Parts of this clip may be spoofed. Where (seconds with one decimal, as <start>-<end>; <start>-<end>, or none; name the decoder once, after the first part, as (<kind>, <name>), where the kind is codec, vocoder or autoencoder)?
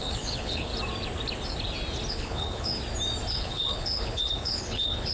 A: 0.0-0.7 (codec, HILCodec); 2.1-2.7; 3.3-5.1